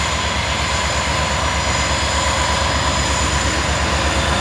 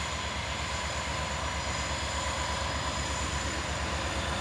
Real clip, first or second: first